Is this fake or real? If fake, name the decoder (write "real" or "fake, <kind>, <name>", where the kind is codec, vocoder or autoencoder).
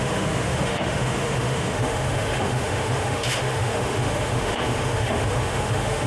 fake, autoencoder, DAC-VAE